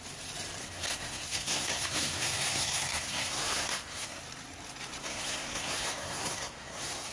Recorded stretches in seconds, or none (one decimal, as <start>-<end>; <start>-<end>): 0.0-0.6; 4.2-5.0